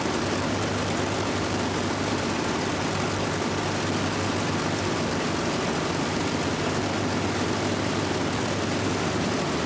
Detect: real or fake real